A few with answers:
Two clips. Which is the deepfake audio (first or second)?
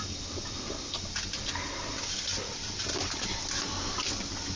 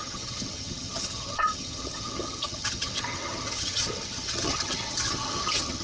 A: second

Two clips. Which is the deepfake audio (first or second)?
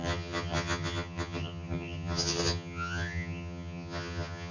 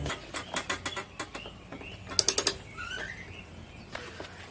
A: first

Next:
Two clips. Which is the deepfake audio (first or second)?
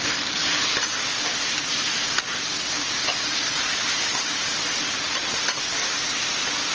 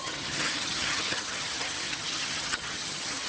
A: second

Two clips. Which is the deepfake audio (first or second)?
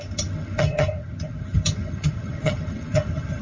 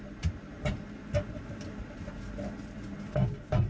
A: first